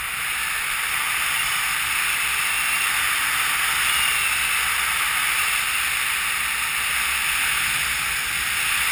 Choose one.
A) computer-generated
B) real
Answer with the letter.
B